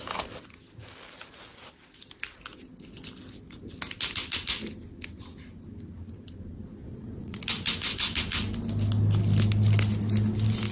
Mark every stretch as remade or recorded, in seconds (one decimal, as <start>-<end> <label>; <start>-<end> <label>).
0.0-6.8 recorded; 6.8-7.4 remade; 7.4-10.7 recorded